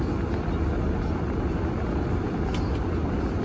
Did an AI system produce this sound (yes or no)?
no